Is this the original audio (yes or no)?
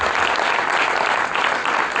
yes